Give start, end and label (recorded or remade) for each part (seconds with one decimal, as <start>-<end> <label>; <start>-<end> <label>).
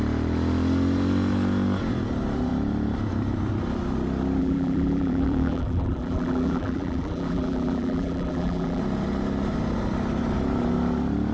0.0-4.4 recorded; 4.4-8.8 remade; 8.8-11.3 recorded